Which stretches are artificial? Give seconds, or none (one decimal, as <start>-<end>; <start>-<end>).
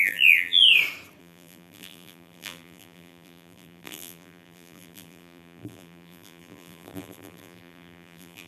0.0-0.6; 1.2-8.5